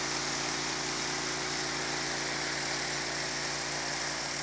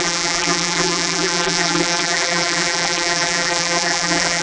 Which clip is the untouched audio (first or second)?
first